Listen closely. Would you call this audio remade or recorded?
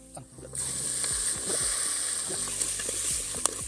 recorded